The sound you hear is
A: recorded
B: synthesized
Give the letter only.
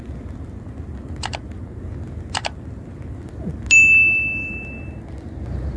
A